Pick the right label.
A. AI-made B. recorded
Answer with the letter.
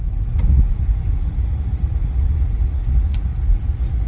A